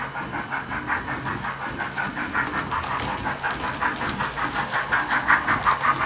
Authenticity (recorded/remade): recorded